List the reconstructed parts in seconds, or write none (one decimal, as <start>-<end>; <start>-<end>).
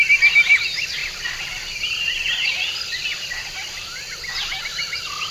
1.0-4.2